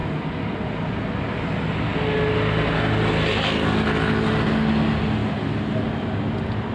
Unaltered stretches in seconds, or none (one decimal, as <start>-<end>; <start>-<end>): 0.0-6.7